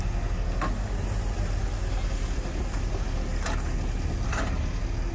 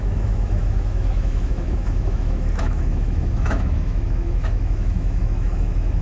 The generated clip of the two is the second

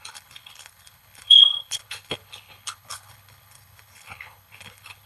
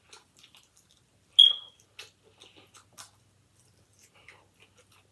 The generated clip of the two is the first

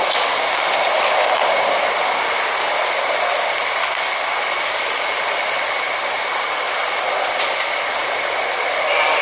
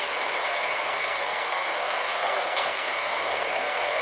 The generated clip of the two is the second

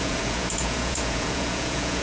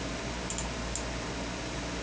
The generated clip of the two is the first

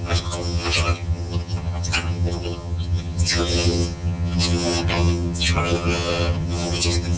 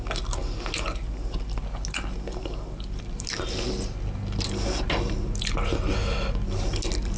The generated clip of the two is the first